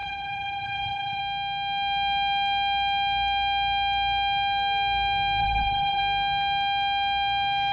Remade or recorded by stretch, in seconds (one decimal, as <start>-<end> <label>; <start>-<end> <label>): 0.0-1.2 remade; 1.2-5.4 recorded; 5.4-6.0 remade; 6.0-7.7 recorded